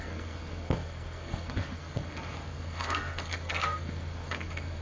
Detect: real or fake fake